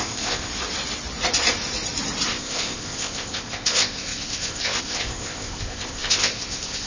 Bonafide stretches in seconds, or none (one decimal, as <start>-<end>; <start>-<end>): 0.5-2.3